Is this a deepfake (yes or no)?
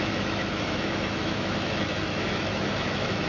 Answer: yes